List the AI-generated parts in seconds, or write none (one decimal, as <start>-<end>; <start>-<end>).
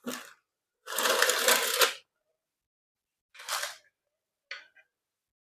none